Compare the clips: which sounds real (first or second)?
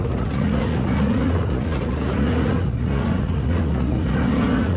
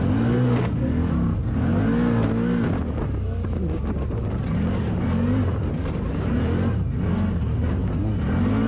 second